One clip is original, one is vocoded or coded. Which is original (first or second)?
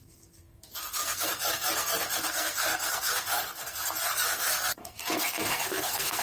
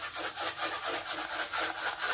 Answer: second